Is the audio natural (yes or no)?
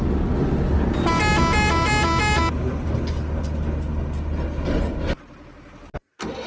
yes